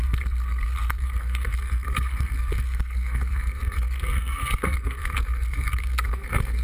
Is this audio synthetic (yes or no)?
yes